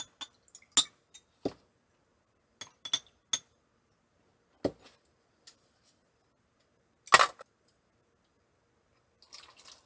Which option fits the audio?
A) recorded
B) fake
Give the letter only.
A